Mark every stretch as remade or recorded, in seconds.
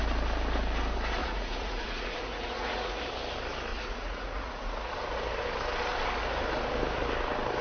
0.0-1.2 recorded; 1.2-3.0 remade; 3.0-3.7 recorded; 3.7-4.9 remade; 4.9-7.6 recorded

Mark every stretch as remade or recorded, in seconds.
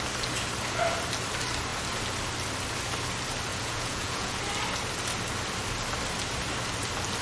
0.0-3.5 recorded; 3.5-4.4 remade; 4.4-7.2 recorded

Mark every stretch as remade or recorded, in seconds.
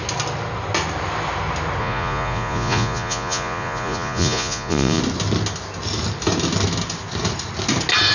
0.0-1.8 recorded; 1.8-5.0 remade; 5.0-8.1 recorded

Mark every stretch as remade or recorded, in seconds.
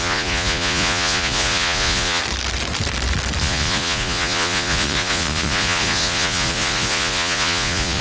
0.0-2.2 remade; 2.2-3.4 recorded; 3.4-8.0 remade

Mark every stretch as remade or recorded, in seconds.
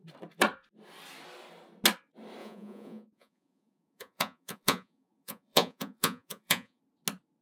0.0-2.4 recorded; 2.4-6.8 remade; 6.8-7.4 recorded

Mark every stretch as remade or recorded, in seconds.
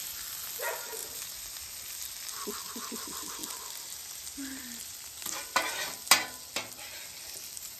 0.0-7.8 recorded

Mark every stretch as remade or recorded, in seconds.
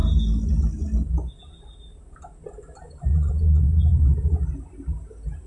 0.0-3.1 recorded; 3.1-3.6 remade; 3.6-5.5 recorded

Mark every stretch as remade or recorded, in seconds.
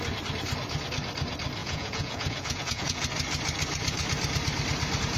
0.0-1.6 recorded; 1.6-3.0 remade; 3.0-5.2 recorded